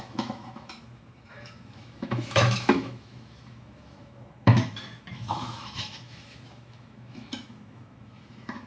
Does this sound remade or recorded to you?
remade